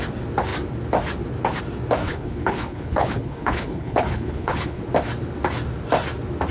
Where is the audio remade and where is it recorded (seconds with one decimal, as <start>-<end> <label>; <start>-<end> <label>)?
0.0-2.0 recorded; 2.0-4.8 remade; 4.8-6.5 recorded